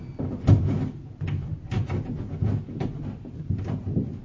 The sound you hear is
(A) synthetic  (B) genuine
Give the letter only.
B